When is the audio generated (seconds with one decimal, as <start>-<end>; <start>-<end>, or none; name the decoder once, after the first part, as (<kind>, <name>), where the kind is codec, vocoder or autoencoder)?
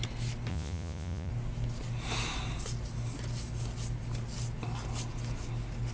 0.5-1.3 (vocoder, Vocos)